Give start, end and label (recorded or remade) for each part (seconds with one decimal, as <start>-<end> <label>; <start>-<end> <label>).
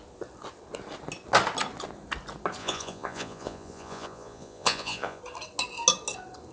0.0-2.6 recorded; 2.6-5.2 remade; 5.2-6.5 recorded